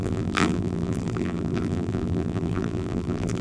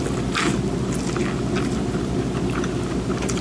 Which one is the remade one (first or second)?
first